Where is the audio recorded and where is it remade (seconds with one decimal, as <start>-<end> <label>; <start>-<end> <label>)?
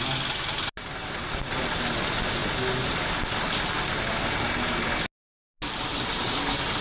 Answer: 0.0-6.8 recorded